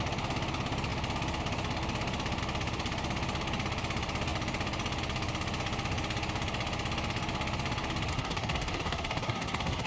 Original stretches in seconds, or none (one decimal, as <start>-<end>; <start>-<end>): 0.0-8.1